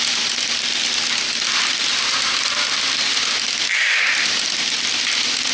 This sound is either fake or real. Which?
real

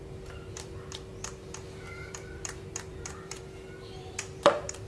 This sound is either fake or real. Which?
fake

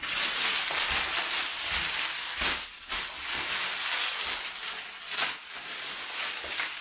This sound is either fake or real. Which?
real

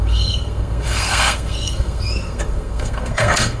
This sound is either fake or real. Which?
fake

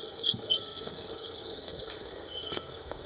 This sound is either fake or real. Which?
fake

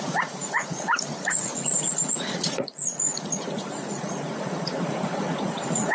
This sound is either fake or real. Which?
fake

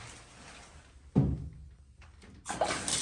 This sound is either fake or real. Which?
real